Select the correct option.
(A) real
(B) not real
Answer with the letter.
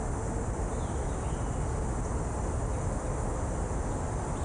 A